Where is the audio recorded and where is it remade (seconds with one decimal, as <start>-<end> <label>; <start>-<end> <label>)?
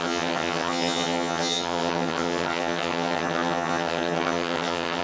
0.0-5.0 remade